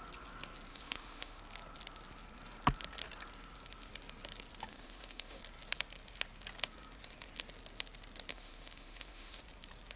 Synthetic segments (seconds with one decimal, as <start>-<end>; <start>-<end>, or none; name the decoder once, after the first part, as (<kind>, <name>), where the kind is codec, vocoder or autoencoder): 0.7-1.4 (autoencoder, DAC-VAE); 4.7-5.4; 8.3-9.4